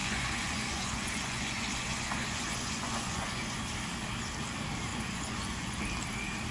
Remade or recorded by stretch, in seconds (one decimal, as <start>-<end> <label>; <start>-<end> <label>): 0.0-3.6 remade; 3.6-4.9 recorded; 4.9-5.8 remade; 5.8-6.5 recorded